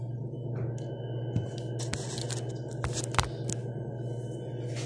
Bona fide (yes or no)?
yes